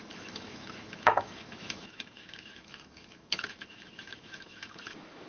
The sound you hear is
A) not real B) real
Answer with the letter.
A